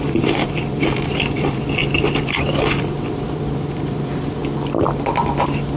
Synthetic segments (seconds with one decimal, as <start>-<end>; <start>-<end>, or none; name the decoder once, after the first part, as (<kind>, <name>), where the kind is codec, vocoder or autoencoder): 0.0-4.4 (vocoder, BigVGAN v2)